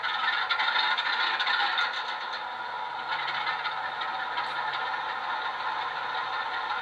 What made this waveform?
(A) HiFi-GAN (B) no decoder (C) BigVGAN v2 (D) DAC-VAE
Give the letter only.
B